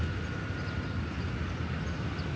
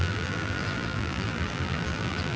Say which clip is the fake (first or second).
second